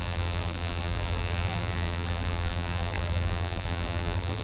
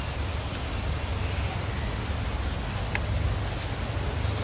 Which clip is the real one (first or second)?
second